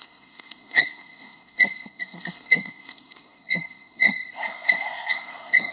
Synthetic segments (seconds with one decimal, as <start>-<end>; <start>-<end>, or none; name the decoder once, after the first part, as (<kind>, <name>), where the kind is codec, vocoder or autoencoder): 0.0-5.7 (codec, SNAC)